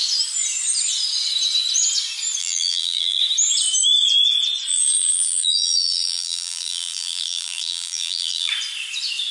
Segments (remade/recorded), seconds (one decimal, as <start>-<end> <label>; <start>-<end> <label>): 0.0-2.4 recorded; 2.4-3.2 remade; 3.2-4.7 recorded; 4.7-8.5 remade; 8.5-9.3 recorded

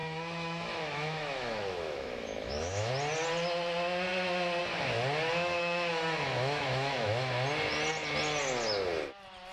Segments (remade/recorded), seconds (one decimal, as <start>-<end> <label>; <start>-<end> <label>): 0.0-2.9 remade; 2.9-5.3 recorded; 5.3-7.3 remade; 7.3-9.5 recorded

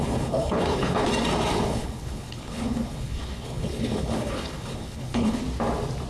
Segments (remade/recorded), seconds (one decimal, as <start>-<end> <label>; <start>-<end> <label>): 0.0-1.1 remade; 1.1-1.7 recorded; 1.7-5.4 remade; 5.4-6.1 recorded

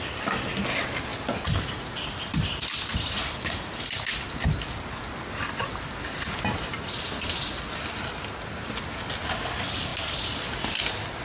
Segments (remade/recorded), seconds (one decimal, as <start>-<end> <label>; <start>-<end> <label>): 0.0-11.2 recorded

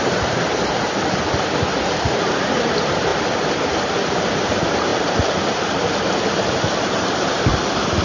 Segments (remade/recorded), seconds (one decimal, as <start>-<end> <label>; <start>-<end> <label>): 0.0-4.9 remade; 4.9-5.9 recorded; 5.9-7.5 remade; 7.5-8.0 recorded

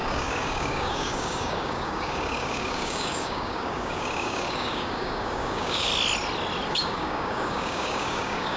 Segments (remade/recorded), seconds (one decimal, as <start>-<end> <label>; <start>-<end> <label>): 0.0-5.9 remade; 5.9-6.7 recorded; 6.7-8.6 remade